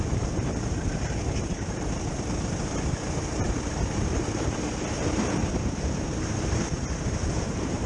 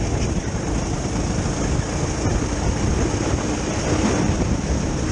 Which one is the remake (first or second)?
first